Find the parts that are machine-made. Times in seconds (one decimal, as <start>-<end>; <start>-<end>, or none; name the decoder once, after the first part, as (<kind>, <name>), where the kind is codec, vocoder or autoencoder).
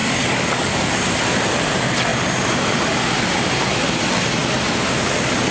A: 0.0-0.9 (codec, DAC)